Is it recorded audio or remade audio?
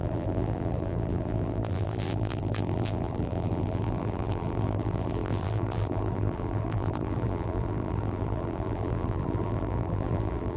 remade